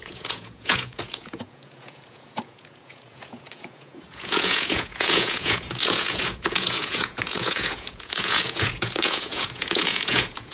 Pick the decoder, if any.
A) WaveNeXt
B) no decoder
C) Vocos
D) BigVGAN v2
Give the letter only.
C